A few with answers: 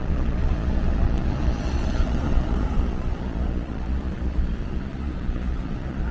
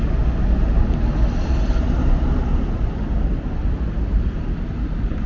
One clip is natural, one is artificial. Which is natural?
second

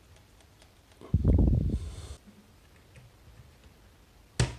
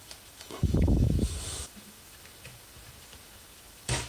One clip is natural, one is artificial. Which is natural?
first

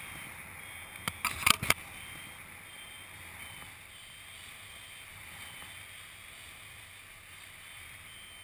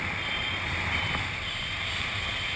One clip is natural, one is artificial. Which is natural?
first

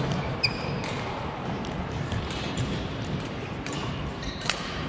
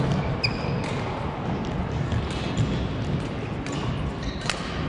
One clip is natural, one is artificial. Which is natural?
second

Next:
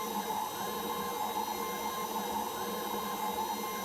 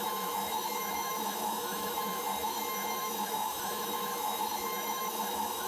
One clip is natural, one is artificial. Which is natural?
first